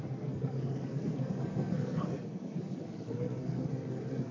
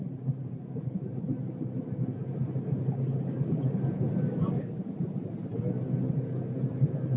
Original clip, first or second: second